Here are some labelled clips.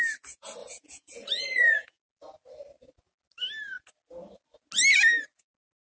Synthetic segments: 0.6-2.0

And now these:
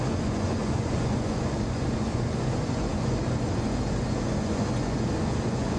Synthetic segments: 0.0-5.8

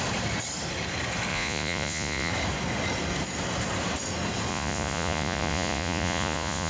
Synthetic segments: 1.3-2.3; 4.5-6.7

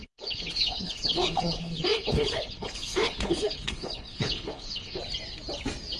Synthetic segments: 0.0-5.0